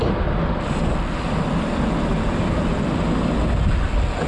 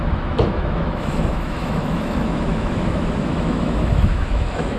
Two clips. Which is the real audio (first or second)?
first